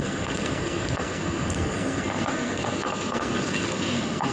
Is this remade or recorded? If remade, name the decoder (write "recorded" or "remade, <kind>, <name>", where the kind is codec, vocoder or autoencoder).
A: remade, codec, SNAC